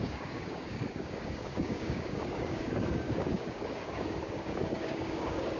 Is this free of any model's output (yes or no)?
no